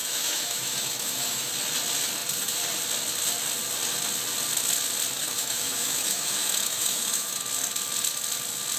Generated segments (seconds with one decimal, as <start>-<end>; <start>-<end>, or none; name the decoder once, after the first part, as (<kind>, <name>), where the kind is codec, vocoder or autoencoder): 0.0-1.5 (autoencoder, DAC-VAE); 5.2-7.4